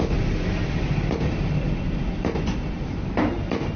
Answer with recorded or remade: recorded